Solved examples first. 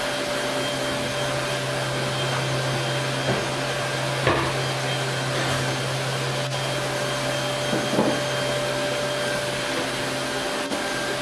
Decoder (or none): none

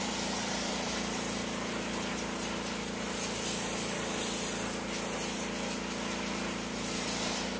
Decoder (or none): none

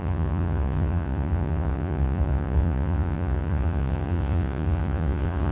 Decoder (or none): vocoder, Vocos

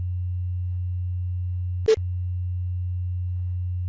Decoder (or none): none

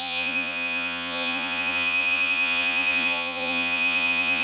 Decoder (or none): vocoder, Vocos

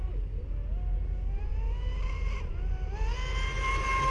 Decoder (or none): none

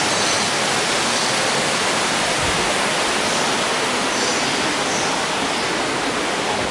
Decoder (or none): none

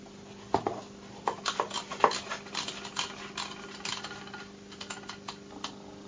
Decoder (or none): none